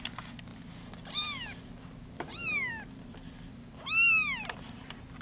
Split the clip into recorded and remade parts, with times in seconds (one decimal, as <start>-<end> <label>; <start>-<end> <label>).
0.0-5.2 recorded